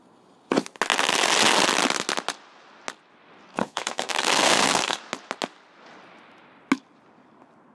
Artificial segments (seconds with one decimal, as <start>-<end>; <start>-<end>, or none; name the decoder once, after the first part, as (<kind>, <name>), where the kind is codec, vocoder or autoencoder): 3.5-5.0 (codec, SNAC)